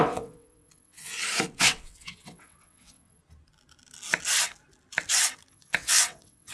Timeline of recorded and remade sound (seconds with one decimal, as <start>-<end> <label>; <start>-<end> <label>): 0.0-1.1 remade; 1.1-1.6 recorded; 1.6-3.2 remade; 3.2-5.5 recorded; 5.5-6.5 remade